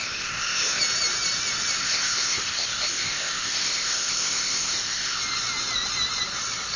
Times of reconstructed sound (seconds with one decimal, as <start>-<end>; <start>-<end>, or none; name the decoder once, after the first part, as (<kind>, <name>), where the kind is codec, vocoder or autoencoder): 0.0-0.8 (codec, ZipCodec); 1.8-5.2